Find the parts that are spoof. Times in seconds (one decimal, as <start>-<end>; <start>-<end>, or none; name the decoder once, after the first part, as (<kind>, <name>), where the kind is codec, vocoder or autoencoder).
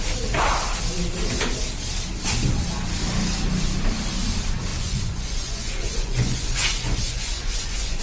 4.7-8.0 (vocoder, Vocos)